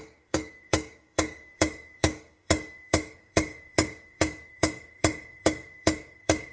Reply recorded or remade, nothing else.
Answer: remade